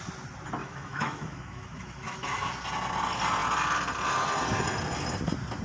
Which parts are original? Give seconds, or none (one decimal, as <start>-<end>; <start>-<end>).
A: 0.0-0.6; 2.5-5.6